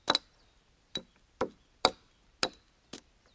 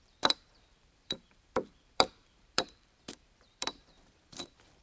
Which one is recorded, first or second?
first